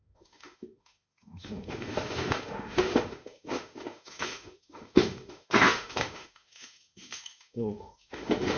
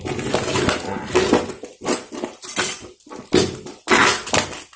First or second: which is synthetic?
first